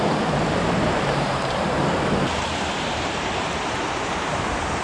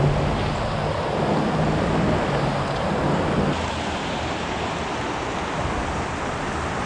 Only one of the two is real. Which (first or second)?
second